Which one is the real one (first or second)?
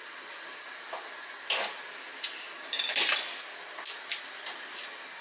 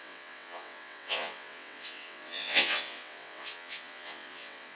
first